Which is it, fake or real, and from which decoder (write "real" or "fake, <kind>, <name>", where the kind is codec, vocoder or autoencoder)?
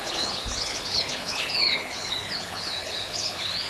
fake, codec, HILCodec